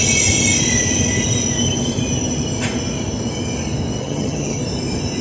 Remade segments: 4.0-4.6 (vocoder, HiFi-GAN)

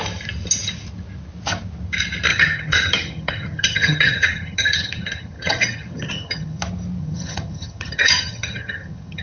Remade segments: 2.3-6.6 (vocoder, HiFi-GAN); 7.0-9.2

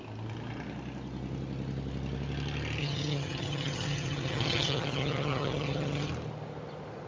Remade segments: 2.8-6.1 (vocoder, HiFi-GAN)

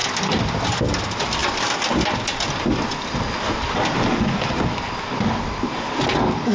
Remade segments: none

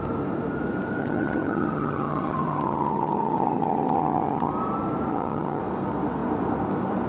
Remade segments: 1.0-4.5 (vocoder, HiFi-GAN); 5.1-5.6

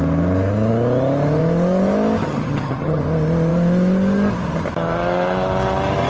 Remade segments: 2.2-3.0 (vocoder, HiFi-GAN)